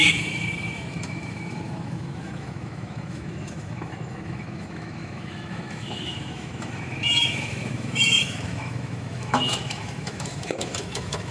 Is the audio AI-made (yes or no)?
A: yes